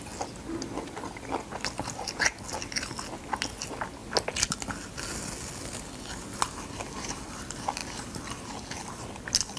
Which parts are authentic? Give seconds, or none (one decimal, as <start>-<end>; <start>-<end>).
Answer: 0.0-9.6